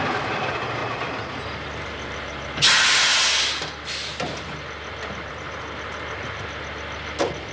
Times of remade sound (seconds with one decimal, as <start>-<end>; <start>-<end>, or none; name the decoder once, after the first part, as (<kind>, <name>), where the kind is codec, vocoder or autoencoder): none